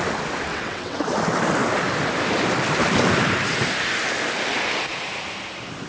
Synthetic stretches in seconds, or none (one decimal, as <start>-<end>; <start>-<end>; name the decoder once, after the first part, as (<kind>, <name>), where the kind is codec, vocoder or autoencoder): 0.5-1.0 (vocoder, WaveNeXt)